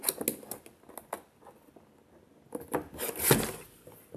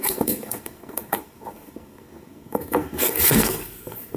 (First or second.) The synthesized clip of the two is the second